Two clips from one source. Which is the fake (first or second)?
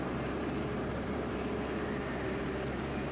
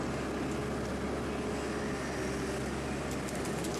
first